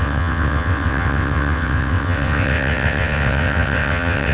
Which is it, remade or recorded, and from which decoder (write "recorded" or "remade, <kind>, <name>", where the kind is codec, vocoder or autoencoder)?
remade, vocoder, WaveNeXt